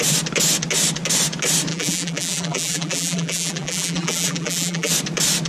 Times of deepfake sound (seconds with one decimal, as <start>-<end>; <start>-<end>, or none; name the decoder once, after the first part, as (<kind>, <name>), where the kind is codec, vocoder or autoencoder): 1.7-4.9 (vocoder, BigVGAN v2)